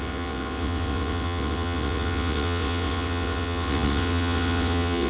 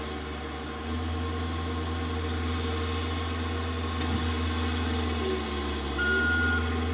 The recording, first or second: second